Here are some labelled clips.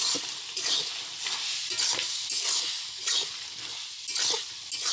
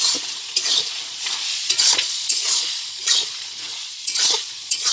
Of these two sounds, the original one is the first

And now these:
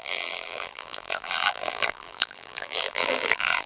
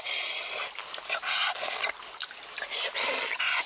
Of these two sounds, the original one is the second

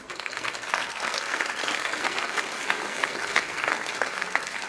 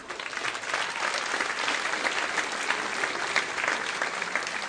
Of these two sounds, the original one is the second